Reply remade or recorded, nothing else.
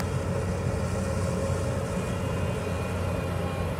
recorded